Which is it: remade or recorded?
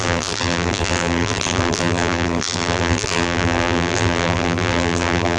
remade